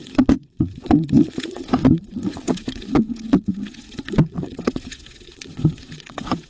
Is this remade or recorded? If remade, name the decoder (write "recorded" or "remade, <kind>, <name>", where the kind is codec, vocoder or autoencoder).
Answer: remade, vocoder, WaveNeXt